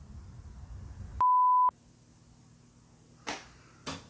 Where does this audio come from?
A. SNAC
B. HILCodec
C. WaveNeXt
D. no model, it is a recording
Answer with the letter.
D